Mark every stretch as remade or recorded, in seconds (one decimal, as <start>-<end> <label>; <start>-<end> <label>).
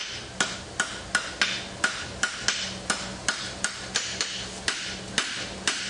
0.0-5.9 recorded